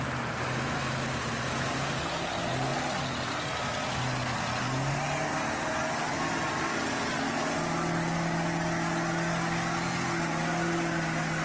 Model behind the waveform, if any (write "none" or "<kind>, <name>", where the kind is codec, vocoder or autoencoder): none